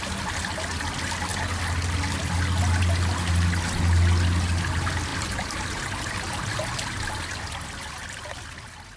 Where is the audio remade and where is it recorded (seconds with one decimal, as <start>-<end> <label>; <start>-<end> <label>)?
0.0-9.0 recorded

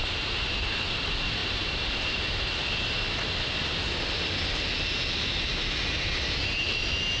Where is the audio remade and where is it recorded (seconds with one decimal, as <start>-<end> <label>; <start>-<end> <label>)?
0.0-7.2 recorded

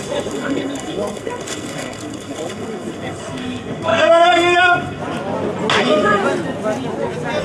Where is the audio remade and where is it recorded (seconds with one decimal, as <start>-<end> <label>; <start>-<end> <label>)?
0.0-5.0 remade; 5.0-5.8 recorded; 5.8-6.2 remade; 6.2-7.4 recorded